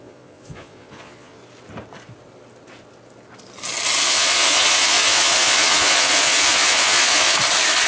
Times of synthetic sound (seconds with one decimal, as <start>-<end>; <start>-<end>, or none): 0.0-1.4; 4.0-7.3